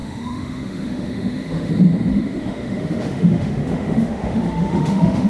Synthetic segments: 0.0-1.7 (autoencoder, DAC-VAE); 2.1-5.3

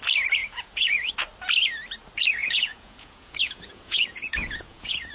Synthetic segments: 0.4-1.1 (vocoder, Vocos); 2.4-5.1

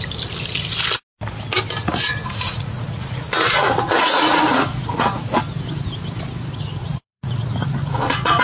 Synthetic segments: 1.8-5.3 (vocoder, Vocos); 6.8-8.4

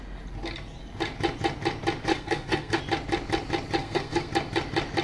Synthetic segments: 2.1-2.8 (codec, SNAC); 3.8-4.3